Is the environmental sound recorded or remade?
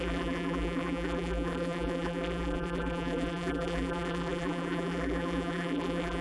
remade